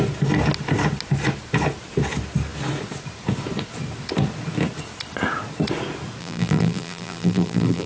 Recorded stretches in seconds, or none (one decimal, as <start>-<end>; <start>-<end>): 0.0-6.2